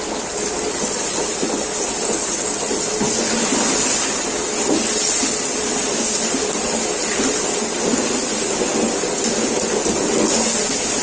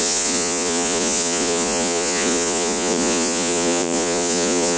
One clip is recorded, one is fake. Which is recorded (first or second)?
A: first